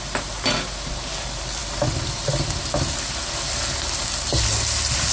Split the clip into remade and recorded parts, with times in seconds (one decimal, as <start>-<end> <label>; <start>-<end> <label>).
0.0-5.1 recorded